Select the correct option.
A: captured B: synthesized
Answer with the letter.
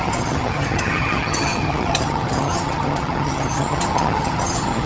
B